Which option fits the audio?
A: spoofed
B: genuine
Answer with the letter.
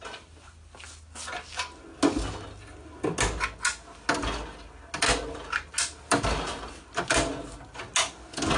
B